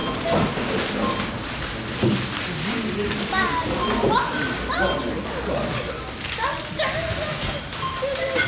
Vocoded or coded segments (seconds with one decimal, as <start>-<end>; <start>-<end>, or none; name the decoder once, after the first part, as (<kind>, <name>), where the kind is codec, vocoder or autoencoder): none

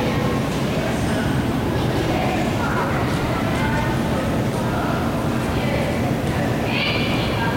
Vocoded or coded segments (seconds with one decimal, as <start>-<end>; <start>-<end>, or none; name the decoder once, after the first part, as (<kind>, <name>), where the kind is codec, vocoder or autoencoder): 0.5-3.6 (vocoder, BigVGAN v2)

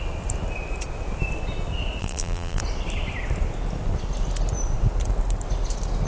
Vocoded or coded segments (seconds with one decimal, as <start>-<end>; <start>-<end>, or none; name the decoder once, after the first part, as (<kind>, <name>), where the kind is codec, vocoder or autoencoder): 2.0-2.6 (vocoder, BigVGAN v2)